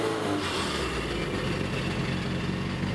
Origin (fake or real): real